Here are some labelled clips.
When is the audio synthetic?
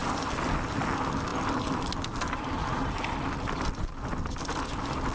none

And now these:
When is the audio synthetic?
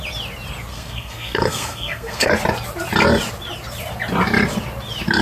0.7-2.3 (codec, SNAC)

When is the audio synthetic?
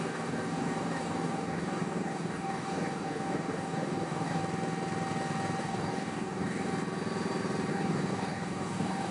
0.0-4.4 (codec, DAC); 5.6-6.7; 7.7-9.1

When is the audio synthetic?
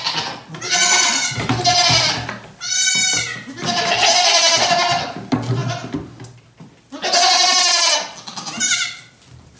none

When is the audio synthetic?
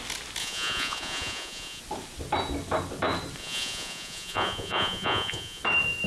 0.4-1.8 (vocoder, Vocos); 3.4-5.6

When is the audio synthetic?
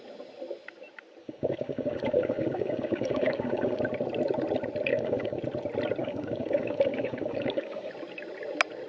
1.2-3.8 (codec, DAC); 4.9-5.4; 6.0-7.9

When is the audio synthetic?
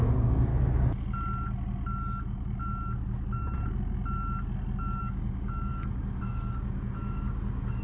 0.0-0.5 (codec, DAC); 5.0-7.8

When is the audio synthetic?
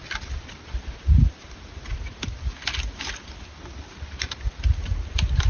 none